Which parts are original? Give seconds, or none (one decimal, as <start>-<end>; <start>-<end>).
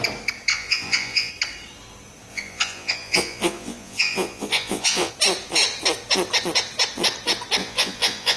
0.0-0.5; 1.3-2.3; 5.1-7.6